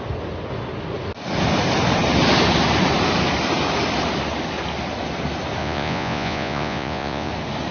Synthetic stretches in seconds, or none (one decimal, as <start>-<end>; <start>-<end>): 5.6-7.3